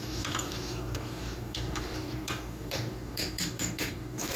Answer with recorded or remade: remade